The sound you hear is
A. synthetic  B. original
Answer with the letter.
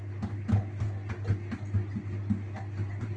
B